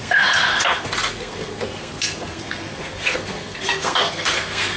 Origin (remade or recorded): remade